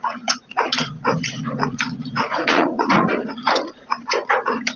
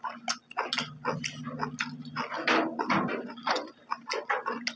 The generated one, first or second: first